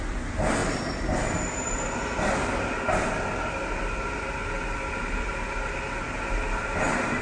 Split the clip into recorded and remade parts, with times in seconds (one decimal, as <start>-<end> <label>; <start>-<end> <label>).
0.0-7.2 recorded

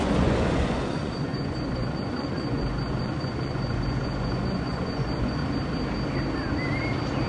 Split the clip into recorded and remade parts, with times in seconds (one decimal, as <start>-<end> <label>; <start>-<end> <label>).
0.0-5.4 remade; 5.4-7.3 recorded

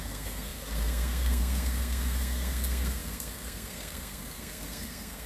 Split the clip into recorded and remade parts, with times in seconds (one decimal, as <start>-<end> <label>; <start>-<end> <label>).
0.0-5.3 remade